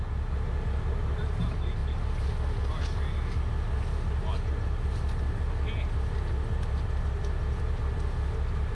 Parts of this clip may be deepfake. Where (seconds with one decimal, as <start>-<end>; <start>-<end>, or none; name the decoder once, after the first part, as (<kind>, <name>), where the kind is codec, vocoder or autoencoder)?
none